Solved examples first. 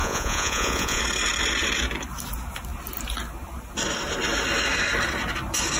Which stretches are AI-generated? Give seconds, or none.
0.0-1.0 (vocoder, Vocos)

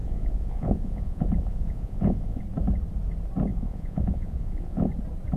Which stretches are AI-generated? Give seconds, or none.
0.0-2.4 (vocoder, Vocos); 3.5-4.9

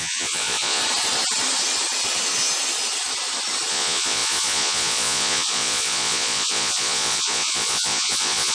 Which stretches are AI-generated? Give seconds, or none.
0.0-0.8 (vocoder, Vocos); 3.7-8.5

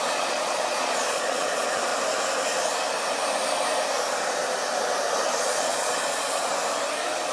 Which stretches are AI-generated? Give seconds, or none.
0.0-1.9 (vocoder, Vocos); 5.4-6.5

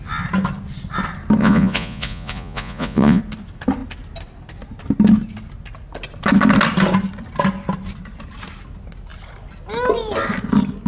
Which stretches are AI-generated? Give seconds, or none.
1.4-3.2 (vocoder, Vocos)

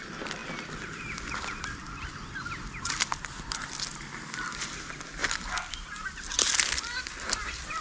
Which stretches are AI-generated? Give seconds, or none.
none

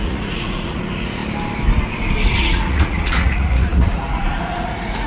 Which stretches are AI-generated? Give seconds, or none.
0.0-1.2 (vocoder, Vocos); 2.4-5.1